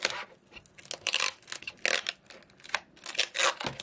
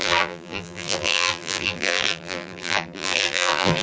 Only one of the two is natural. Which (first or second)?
first